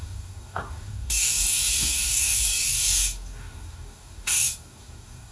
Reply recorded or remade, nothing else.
remade